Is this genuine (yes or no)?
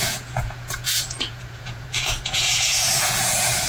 no